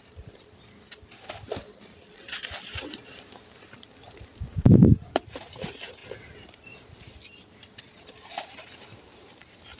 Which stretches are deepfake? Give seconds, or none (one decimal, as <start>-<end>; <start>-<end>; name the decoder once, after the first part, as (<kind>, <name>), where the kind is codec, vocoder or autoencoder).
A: 0.0-1.6 (vocoder, BigVGAN v2); 2.7-9.8